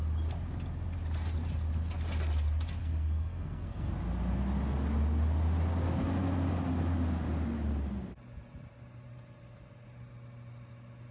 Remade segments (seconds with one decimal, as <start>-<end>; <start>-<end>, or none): 2.8-3.9